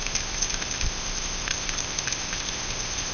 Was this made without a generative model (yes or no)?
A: no